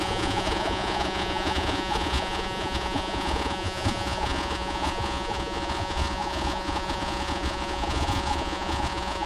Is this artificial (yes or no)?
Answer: yes